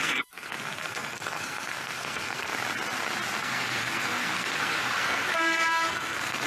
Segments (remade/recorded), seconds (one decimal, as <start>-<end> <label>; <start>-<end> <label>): 0.0-2.5 remade; 2.5-3.4 recorded; 3.4-6.5 remade